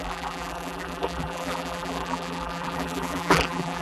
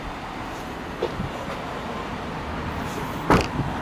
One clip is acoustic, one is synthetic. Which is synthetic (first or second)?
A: first